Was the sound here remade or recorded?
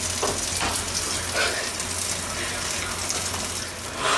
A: recorded